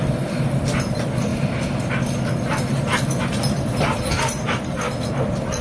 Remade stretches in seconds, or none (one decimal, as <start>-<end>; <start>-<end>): none